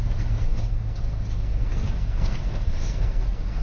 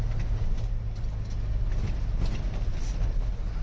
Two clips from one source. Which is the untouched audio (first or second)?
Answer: second